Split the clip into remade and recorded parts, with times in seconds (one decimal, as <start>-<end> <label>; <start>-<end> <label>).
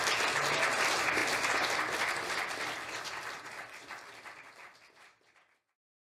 0.0-6.1 recorded